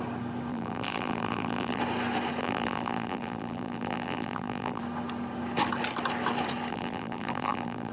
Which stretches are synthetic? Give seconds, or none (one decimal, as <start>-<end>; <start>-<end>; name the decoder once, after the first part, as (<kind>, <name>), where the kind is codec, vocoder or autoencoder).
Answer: 0.5-1.8 (vocoder, BigVGAN v2); 2.4-4.8; 6.7-7.9